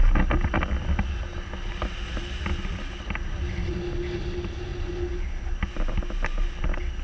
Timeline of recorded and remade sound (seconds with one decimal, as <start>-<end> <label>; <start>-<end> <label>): 0.0-7.0 recorded